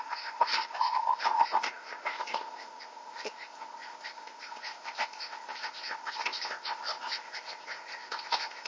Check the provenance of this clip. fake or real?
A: fake